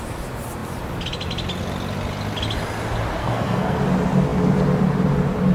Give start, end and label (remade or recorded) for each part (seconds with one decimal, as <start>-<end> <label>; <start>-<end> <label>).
0.0-3.2 recorded; 3.2-3.8 remade; 3.8-5.5 recorded